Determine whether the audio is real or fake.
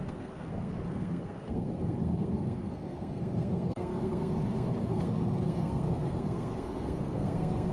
fake